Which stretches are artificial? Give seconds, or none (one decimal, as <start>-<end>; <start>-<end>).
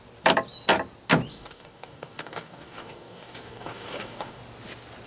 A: 1.3-4.4